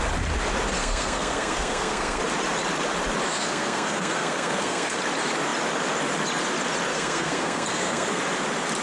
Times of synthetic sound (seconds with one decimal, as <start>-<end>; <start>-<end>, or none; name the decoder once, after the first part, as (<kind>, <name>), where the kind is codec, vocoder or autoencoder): 0.8-2.2 (codec, SNAC); 3.3-5.0; 6.9-8.2